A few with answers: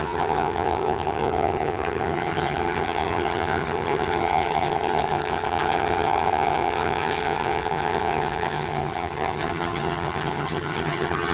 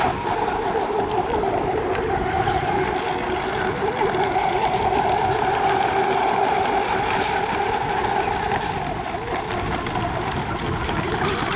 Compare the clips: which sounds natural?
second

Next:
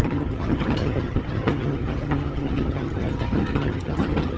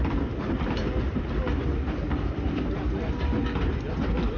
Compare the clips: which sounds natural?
second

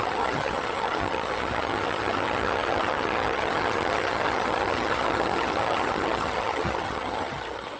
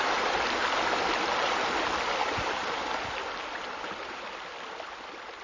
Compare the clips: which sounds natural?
second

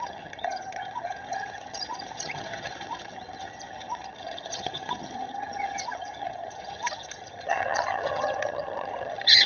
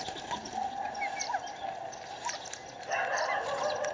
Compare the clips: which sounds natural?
second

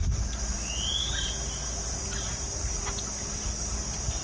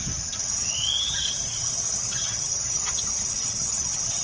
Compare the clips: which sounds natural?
first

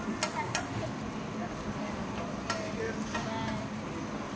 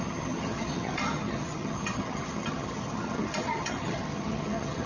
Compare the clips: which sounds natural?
first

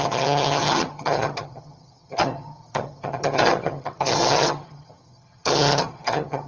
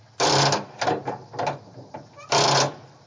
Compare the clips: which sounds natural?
second